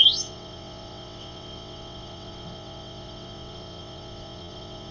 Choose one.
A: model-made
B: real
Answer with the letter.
A